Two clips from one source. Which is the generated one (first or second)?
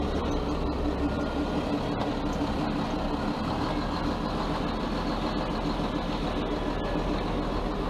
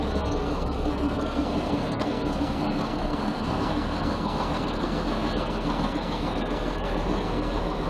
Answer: second